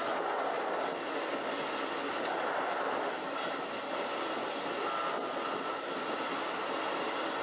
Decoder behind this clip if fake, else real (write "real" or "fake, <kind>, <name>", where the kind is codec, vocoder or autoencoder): real